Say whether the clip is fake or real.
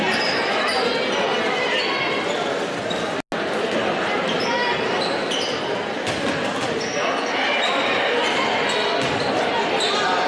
real